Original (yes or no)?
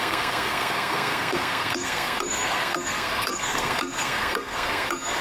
no